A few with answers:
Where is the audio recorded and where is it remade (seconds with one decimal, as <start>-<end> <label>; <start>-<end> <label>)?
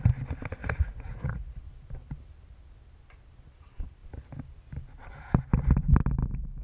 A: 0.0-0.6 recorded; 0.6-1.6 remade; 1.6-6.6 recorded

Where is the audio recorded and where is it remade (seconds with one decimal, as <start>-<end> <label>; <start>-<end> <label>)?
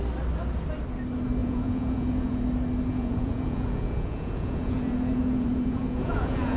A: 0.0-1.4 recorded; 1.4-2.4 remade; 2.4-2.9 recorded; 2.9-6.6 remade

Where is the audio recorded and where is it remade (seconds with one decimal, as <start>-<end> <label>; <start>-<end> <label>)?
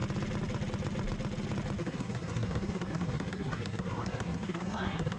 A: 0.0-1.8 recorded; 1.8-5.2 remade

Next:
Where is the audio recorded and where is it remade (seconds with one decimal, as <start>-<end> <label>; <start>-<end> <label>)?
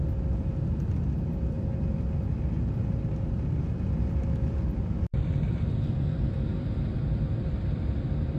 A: 0.0-1.7 remade; 1.7-3.1 recorded; 3.1-8.4 remade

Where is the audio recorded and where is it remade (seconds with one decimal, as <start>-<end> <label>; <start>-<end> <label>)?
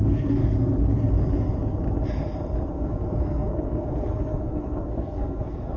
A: 0.0-0.4 remade; 0.4-2.7 recorded; 2.7-5.8 remade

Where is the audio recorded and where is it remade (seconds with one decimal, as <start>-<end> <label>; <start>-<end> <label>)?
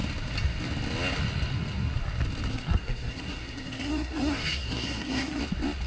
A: 0.0-2.5 recorded; 2.5-5.4 remade; 5.4-5.9 recorded